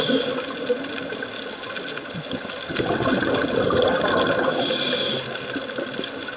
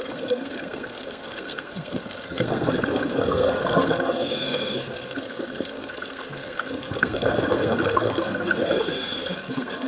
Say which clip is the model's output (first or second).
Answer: second